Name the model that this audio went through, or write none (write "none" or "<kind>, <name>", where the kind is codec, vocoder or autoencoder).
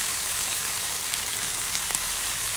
codec, DAC